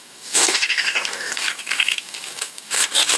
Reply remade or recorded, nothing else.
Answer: remade